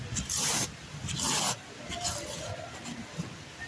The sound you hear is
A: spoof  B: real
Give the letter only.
B